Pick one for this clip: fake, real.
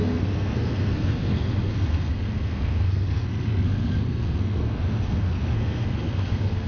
fake